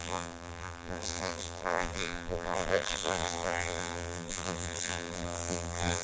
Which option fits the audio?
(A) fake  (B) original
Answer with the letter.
A